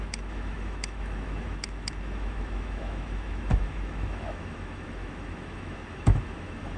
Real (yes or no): no